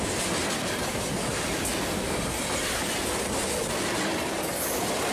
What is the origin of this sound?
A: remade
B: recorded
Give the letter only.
B